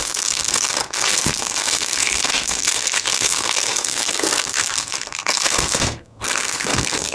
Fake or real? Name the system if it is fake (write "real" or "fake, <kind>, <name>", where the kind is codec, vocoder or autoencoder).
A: fake, codec, SNAC